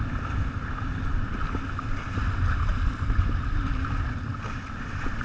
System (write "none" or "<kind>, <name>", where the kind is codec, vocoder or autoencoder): none